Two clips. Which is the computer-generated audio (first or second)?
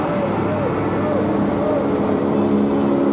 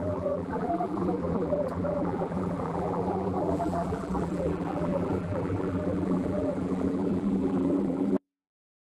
second